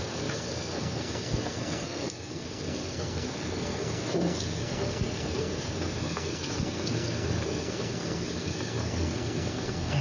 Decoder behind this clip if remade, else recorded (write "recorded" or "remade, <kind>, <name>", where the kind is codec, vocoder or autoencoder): remade, codec, SNAC